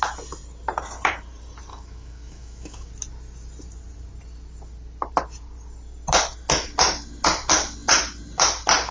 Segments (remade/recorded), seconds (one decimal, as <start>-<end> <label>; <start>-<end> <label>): 0.0-1.7 recorded; 1.7-2.9 remade; 2.9-8.9 recorded